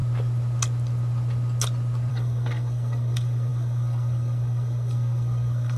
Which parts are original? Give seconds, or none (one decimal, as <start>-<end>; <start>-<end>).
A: 0.0-2.1